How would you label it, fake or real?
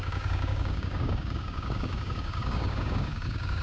fake